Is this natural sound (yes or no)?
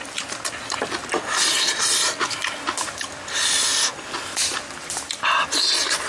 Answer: yes